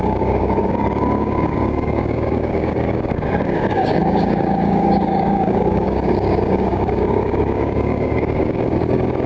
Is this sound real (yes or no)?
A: no